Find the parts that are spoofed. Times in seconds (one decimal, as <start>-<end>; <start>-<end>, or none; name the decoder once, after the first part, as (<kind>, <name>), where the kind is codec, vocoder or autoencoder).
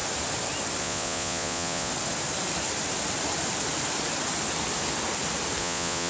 0.8-1.9 (vocoder, Vocos); 5.6-6.1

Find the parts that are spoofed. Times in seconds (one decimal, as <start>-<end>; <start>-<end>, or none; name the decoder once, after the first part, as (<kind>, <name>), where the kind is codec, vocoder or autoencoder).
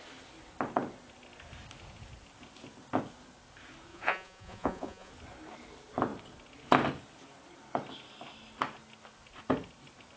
3.9-5.1 (vocoder, Vocos)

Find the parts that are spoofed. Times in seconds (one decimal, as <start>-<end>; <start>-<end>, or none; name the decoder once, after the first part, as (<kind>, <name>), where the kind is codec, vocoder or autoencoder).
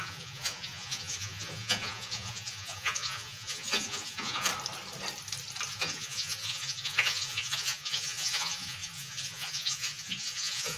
0.0-4.5 (vocoder, Vocos); 5.7-10.8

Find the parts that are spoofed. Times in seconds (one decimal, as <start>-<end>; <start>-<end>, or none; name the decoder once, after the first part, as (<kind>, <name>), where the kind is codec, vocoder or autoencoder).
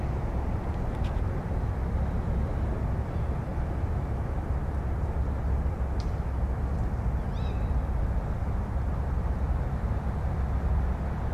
none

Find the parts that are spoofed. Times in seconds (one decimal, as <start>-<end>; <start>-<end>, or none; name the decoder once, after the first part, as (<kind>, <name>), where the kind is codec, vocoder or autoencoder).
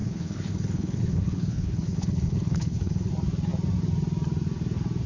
0.0-3.1 (codec, HILCodec)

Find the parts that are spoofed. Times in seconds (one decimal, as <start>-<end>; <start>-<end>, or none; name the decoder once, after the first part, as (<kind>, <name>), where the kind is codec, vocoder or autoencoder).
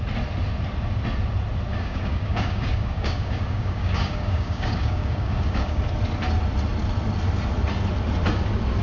1.7-5.8 (codec, DAC)